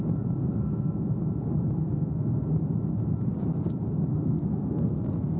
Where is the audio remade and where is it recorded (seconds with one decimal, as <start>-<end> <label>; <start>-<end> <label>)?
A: 0.0-0.4 recorded; 0.4-1.2 remade; 1.2-1.8 recorded; 1.8-2.5 remade; 2.5-4.1 recorded; 4.1-5.4 remade